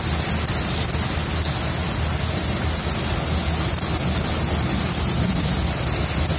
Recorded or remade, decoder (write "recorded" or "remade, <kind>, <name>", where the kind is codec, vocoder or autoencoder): recorded